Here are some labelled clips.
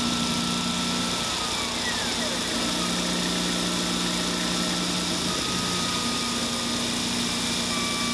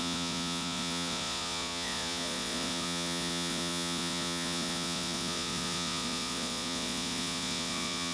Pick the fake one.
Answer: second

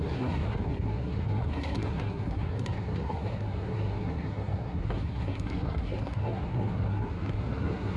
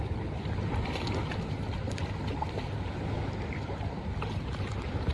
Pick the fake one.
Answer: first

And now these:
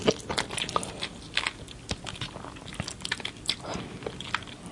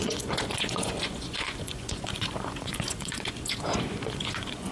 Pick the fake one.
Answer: second